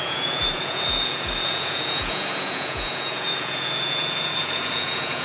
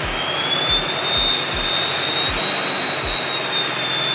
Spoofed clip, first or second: first